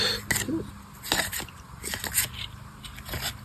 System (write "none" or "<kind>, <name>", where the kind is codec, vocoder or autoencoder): none